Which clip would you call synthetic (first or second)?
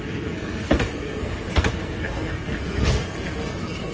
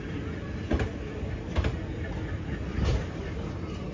first